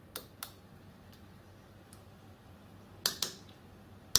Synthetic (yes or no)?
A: no